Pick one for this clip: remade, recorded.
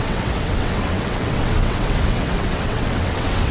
remade